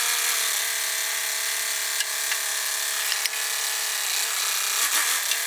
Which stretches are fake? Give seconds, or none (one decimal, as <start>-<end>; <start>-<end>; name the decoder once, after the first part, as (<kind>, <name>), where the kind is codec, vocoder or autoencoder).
none